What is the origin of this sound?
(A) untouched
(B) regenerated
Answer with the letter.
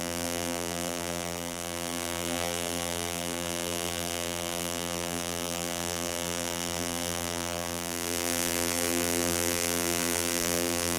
B